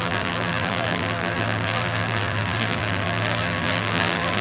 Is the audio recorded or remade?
remade